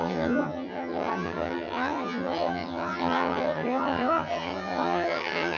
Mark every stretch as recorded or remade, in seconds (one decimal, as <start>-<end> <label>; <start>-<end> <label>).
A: 0.0-5.6 remade